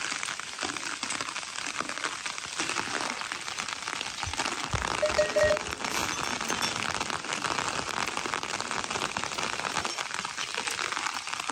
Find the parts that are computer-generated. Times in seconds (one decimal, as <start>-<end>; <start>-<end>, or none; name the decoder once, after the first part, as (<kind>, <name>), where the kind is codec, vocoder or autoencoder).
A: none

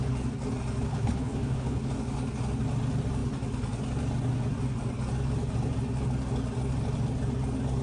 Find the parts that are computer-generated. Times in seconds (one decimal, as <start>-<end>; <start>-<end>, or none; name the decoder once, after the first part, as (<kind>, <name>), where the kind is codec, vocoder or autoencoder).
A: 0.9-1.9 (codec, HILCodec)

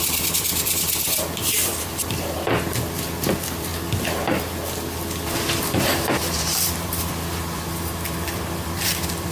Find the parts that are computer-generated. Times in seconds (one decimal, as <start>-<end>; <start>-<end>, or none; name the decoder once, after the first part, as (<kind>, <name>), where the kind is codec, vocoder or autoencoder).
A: 0.0-3.7 (vocoder, BigVGAN v2); 5.6-9.3

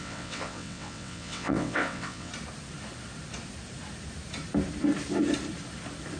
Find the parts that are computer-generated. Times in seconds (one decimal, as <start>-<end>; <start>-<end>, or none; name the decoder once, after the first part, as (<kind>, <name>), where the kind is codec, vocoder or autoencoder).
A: 0.0-2.3 (vocoder, WaveNeXt)